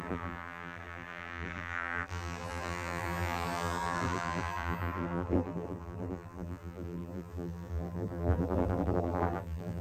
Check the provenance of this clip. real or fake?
fake